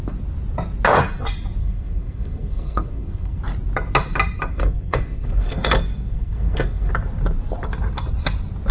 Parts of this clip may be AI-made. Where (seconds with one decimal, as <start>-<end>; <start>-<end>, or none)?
1.6-3.4; 4.5-6.9